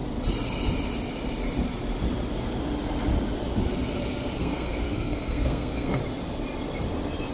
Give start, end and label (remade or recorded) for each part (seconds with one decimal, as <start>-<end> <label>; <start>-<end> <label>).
0.0-4.4 recorded; 4.4-6.0 remade; 6.0-7.3 recorded